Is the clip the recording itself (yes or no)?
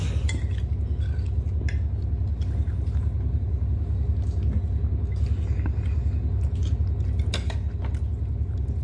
yes